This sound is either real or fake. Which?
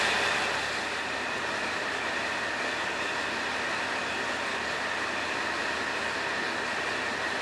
real